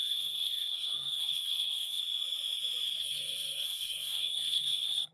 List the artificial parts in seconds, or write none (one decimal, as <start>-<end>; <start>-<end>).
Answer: 0.0-2.0; 3.0-5.1